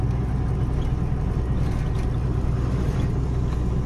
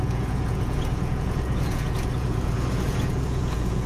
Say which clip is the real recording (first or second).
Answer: first